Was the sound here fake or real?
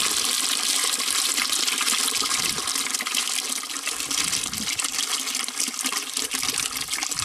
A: real